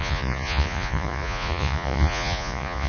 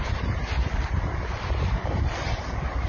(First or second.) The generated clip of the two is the first